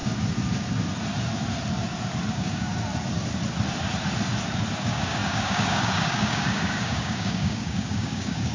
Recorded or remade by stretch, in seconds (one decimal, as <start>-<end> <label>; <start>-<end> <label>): 0.0-2.3 recorded; 2.3-2.7 remade; 2.7-4.8 recorded; 4.8-8.5 remade